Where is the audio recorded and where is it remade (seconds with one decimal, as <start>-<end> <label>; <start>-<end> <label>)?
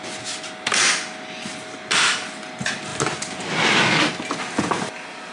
0.0-5.3 recorded